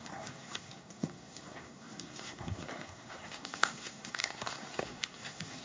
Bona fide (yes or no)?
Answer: no